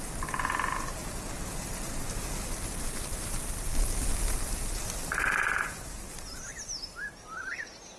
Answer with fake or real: real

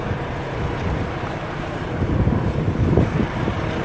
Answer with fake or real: fake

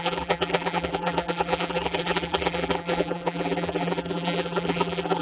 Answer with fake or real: fake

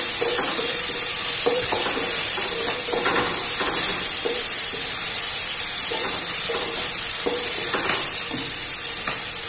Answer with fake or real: fake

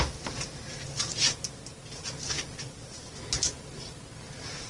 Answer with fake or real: real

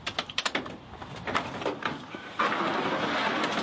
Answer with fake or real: real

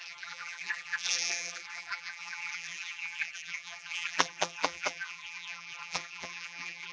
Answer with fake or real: fake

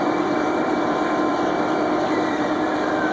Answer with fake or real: fake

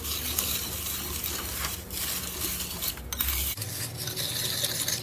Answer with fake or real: real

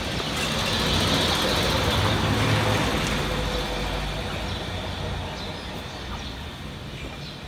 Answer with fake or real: real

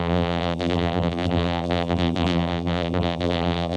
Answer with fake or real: fake